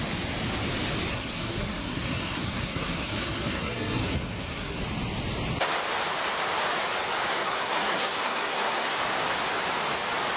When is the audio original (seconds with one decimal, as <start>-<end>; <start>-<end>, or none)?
0.0-1.1; 4.8-7.3; 9.0-10.4